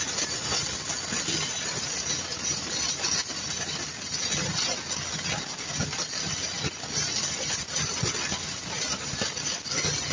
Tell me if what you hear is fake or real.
real